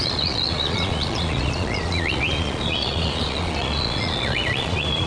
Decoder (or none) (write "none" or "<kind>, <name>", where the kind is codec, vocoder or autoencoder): vocoder, Vocos